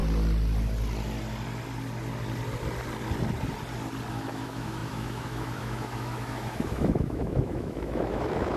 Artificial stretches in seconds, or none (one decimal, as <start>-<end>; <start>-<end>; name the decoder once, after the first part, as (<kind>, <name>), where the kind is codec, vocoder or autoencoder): 4.1-8.6 (autoencoder, DAC-VAE)